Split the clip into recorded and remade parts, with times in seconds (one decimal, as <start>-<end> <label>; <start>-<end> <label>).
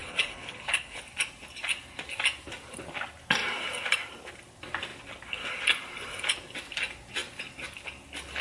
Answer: 0.0-1.0 remade; 1.0-8.4 recorded